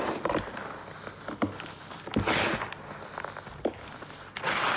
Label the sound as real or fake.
real